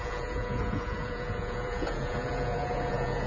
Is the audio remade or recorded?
remade